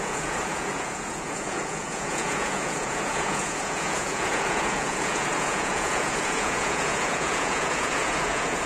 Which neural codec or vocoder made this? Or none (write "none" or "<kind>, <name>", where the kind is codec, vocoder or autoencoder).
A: vocoder, Vocos